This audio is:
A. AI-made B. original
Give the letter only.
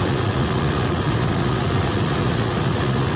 A